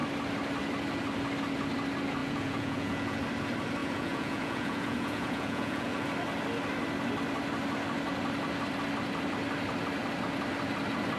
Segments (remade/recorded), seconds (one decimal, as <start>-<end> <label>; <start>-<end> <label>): 0.0-2.2 recorded; 2.2-3.2 remade; 3.2-3.8 recorded; 3.8-6.1 remade; 6.1-11.2 recorded